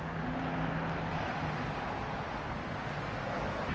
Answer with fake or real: real